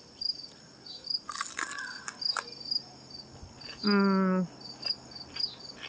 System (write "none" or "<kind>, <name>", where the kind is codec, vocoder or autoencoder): none